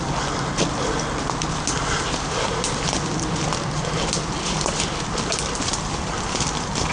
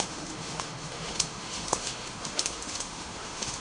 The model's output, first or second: second